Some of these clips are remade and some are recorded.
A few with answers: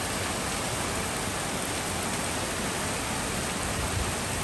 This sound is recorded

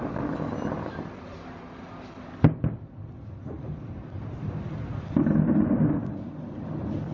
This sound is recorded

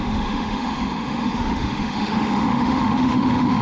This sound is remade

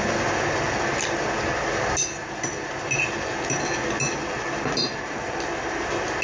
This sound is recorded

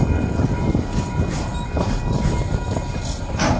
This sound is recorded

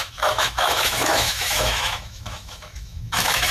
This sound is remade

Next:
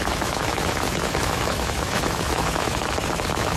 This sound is remade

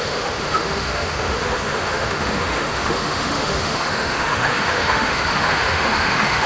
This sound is remade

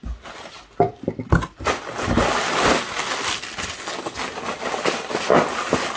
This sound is recorded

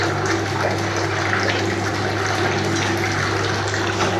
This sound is recorded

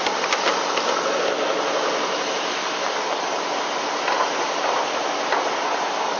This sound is recorded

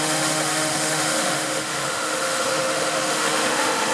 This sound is remade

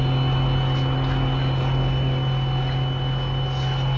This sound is recorded